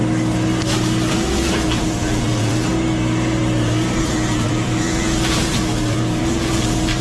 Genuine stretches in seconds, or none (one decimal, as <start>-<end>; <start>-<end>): 0.0-1.1; 2.7-4.0